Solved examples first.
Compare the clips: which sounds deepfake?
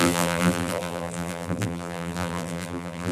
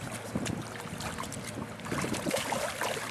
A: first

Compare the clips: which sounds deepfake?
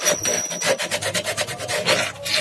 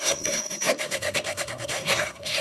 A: second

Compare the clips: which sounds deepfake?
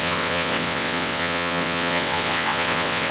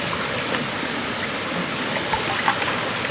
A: first